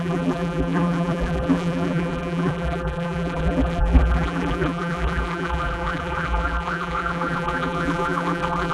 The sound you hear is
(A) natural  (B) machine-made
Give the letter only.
B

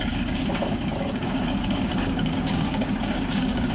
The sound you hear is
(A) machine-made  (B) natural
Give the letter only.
A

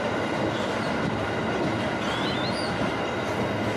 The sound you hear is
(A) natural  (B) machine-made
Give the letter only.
A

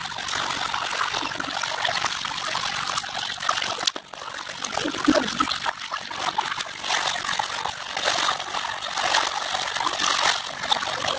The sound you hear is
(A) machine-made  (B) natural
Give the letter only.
B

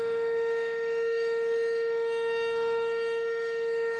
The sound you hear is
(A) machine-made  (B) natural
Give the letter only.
A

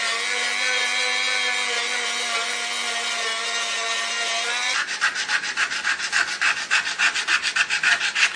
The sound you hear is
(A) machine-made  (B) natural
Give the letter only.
B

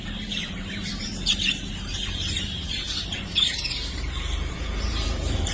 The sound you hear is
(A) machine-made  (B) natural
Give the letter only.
A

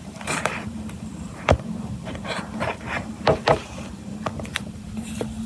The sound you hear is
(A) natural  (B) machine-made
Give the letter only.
B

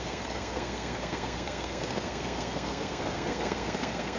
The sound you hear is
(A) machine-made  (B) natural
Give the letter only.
A